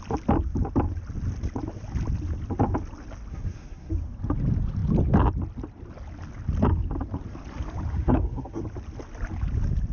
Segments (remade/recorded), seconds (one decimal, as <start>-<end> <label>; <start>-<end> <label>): 0.0-3.3 recorded; 3.3-3.9 remade; 3.9-7.9 recorded; 7.9-8.6 remade; 8.6-9.9 recorded